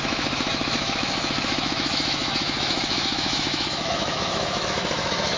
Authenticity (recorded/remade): remade